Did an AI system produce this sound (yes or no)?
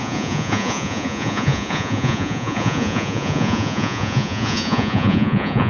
yes